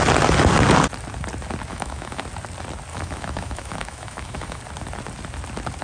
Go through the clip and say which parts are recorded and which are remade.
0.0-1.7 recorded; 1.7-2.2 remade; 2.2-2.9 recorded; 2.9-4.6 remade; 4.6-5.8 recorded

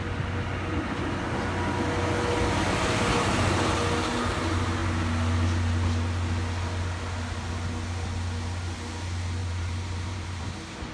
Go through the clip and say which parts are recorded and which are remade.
0.0-9.4 recorded; 9.4-10.4 remade; 10.4-10.9 recorded

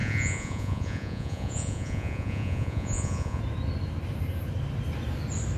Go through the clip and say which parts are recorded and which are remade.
0.0-3.4 remade; 3.4-5.6 recorded